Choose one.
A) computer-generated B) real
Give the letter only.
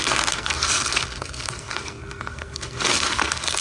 A